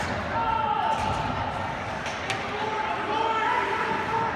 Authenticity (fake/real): real